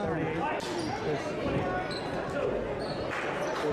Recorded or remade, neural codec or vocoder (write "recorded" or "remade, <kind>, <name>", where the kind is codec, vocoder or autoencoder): recorded